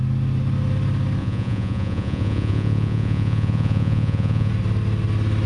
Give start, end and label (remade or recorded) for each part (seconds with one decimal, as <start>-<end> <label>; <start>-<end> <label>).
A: 0.0-1.2 recorded; 1.2-4.5 remade; 4.5-5.5 recorded